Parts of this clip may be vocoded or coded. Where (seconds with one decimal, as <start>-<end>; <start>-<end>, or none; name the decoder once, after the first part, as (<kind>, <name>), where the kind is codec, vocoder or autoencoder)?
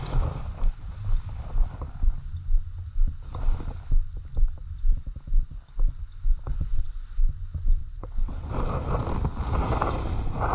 6.5-7.2 (vocoder, WaveNeXt); 7.8-8.5